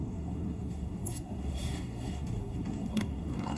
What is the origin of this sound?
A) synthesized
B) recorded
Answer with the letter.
A